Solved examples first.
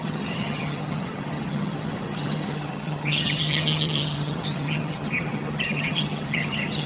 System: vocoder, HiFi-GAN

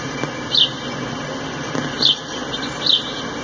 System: none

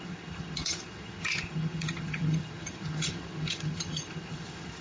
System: vocoder, HiFi-GAN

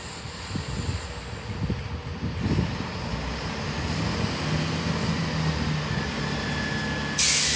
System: none